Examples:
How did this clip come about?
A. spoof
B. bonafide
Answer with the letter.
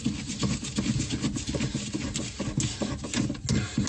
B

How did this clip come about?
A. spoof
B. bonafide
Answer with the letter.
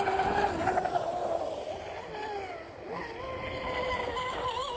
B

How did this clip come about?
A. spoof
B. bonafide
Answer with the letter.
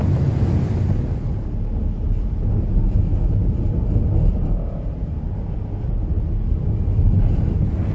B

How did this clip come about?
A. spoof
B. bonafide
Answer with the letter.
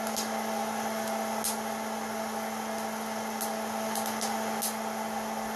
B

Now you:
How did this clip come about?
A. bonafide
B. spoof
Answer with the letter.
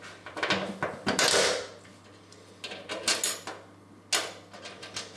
A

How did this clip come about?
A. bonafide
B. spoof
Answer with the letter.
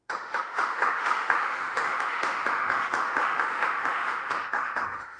B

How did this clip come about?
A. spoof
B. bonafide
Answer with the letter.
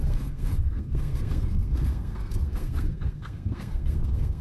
A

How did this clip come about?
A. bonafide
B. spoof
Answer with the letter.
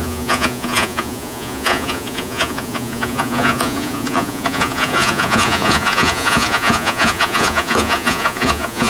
B